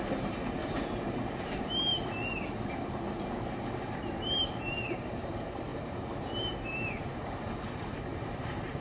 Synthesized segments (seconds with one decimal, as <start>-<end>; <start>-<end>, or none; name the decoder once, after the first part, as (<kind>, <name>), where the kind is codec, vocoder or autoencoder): 0.0-0.6 (vocoder, BigVGAN v2); 1.4-1.9; 3.9-8.8